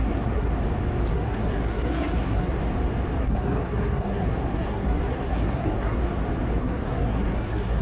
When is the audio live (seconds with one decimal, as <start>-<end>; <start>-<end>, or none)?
0.5-1.1; 2.6-3.2; 6.0-6.6